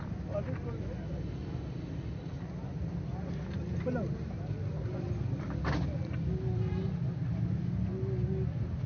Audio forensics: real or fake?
real